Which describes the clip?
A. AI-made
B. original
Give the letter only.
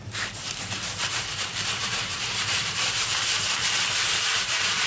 A